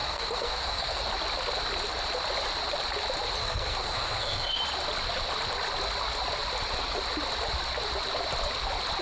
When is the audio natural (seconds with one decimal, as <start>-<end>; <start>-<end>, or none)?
1.0-3.4; 4.6-9.0